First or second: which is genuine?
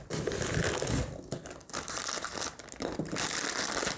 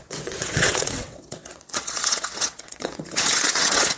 first